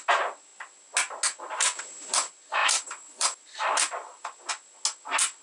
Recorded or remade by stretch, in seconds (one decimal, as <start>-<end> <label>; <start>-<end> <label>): 0.0-2.6 recorded; 2.6-4.5 remade; 4.5-5.4 recorded